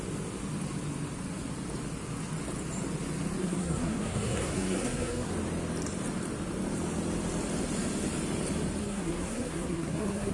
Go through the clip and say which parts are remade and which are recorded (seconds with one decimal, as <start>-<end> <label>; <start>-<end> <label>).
0.0-3.4 recorded; 3.4-5.3 remade; 5.3-8.8 recorded; 8.8-10.3 remade